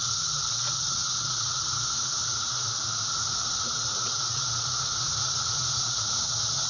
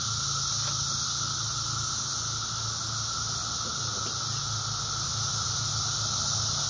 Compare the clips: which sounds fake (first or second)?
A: first